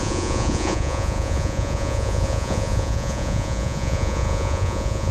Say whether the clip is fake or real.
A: fake